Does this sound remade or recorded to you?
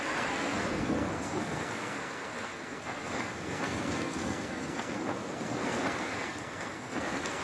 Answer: remade